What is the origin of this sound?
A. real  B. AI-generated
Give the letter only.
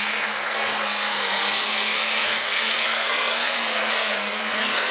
B